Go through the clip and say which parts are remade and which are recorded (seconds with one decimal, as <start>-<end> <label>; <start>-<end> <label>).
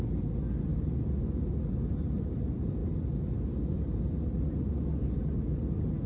0.0-6.1 recorded